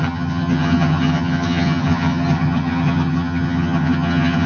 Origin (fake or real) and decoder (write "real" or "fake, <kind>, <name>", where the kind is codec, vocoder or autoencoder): fake, vocoder, HiFi-GAN